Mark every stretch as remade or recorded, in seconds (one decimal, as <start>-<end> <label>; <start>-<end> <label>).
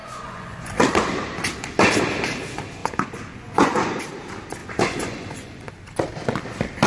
0.0-0.8 remade; 0.8-2.8 recorded; 2.8-4.0 remade; 4.0-4.6 recorded; 4.6-5.7 remade; 5.7-6.9 recorded